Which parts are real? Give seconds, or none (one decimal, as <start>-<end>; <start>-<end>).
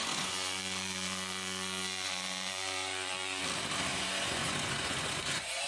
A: 3.4-3.9